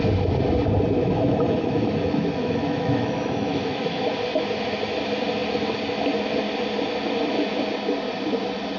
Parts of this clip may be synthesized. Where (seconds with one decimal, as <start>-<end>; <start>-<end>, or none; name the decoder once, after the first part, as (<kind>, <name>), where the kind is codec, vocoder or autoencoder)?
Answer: 1.0-4.0 (autoencoder, DAC-VAE)